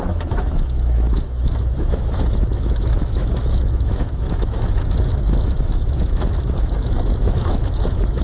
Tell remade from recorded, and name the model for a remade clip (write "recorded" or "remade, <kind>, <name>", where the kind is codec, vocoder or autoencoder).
remade, autoencoder, DAC-VAE